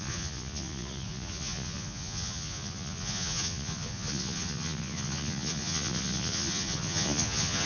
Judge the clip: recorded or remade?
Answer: remade